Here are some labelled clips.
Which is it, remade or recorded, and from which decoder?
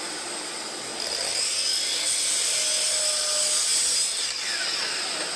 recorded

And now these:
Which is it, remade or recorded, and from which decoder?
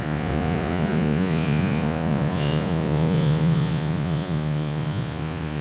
remade, vocoder, Vocos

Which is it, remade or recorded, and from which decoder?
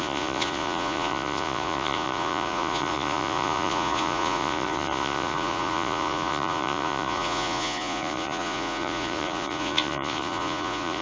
remade, vocoder, Vocos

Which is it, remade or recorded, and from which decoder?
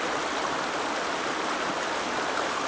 recorded